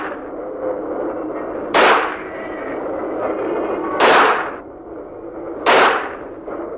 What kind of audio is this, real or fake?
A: real